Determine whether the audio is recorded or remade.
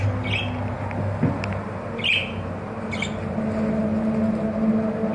recorded